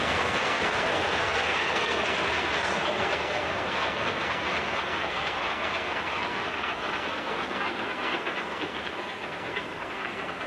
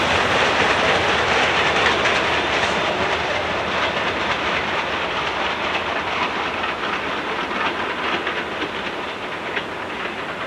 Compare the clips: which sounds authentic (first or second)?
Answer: second